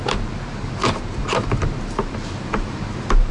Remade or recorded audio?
remade